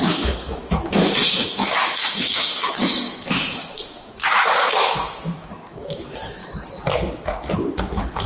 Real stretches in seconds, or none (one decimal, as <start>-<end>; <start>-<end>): 6.4-7.8